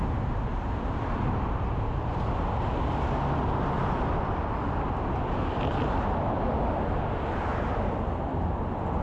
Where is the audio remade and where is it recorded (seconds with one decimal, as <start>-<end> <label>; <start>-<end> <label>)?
0.0-9.0 recorded